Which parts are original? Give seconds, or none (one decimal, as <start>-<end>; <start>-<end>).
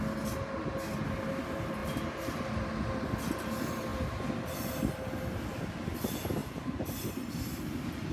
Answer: 0.0-6.4; 7.0-8.1